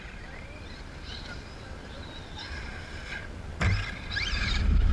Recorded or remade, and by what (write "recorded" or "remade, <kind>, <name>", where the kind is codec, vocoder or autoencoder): remade, vocoder, BigVGAN v2